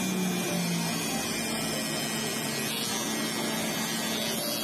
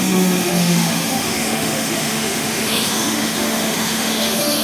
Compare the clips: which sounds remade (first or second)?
second